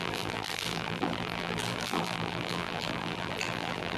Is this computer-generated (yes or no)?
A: yes